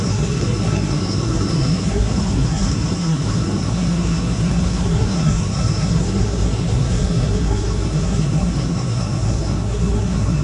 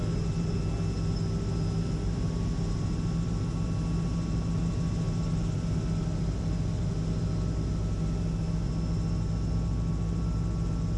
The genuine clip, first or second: second